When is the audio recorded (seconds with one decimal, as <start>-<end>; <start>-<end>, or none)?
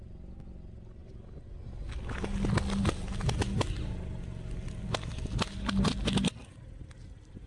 0.0-7.5